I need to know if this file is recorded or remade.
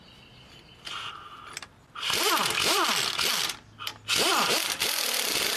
recorded